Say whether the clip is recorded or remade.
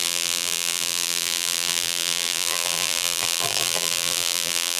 remade